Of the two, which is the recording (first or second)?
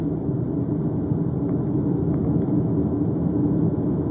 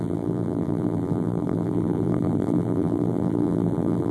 first